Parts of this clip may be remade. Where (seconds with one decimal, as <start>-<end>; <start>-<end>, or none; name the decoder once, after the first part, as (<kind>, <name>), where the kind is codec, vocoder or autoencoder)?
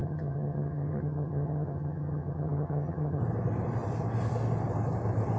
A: 0.0-3.2 (vocoder, HiFi-GAN)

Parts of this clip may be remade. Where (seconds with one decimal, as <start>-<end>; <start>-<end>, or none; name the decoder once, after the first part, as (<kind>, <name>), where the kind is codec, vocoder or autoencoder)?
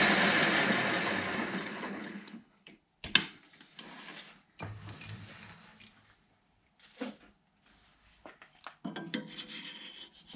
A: 1.5-2.8 (codec, HILCodec)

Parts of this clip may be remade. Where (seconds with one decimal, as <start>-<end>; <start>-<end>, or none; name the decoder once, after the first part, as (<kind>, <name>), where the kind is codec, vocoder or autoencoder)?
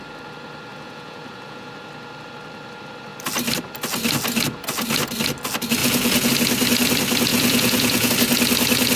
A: 0.7-1.7 (vocoder, Vocos); 5.8-6.3; 7.3-8.1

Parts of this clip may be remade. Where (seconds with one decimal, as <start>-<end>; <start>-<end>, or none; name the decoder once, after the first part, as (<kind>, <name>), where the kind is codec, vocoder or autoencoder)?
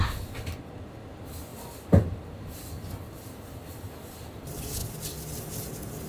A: none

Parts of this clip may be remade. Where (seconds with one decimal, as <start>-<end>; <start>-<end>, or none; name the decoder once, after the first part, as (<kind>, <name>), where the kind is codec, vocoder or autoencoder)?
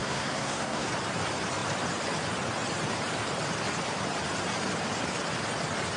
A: 0.0-0.9 (codec, SNAC)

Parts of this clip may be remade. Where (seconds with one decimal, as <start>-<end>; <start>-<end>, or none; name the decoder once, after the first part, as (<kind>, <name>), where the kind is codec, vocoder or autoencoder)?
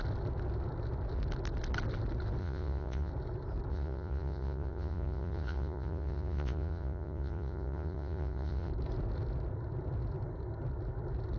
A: 2.4-3.1 (vocoder, Vocos); 3.7-8.7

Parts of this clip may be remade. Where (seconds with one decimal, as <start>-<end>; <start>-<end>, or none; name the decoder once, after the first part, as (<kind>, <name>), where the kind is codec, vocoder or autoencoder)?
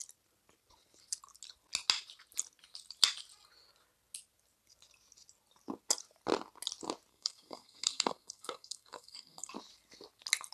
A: 7.1-9.5 (codec, SNAC)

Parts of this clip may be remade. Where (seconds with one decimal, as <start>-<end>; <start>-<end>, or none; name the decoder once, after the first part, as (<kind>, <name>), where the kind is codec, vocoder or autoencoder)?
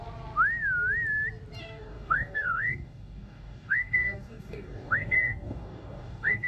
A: 1.6-6.5 (codec, DAC)